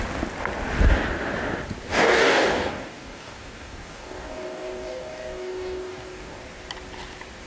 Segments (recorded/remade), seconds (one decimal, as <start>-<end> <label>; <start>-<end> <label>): 0.0-1.9 recorded; 1.9-6.4 remade; 6.4-7.5 recorded